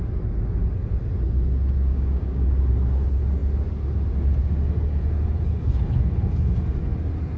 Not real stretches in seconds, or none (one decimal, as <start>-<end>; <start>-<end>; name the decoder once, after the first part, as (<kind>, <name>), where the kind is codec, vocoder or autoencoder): 1.9-2.5 (codec, DAC)